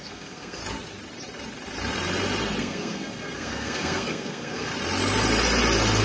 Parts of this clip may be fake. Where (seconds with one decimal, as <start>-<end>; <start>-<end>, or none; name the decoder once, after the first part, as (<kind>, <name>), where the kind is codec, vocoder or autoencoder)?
0.0-0.6 (codec, SNAC); 2.6-4.7